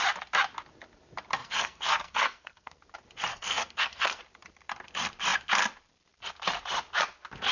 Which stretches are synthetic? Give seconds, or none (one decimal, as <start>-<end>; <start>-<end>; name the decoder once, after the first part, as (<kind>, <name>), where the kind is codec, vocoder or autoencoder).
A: 1.4-2.8 (codec, SNAC); 3.3-4.2